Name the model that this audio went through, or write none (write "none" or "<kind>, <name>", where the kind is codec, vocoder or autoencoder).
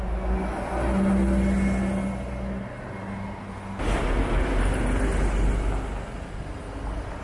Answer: none